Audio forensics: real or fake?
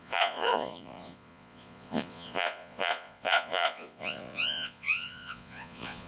fake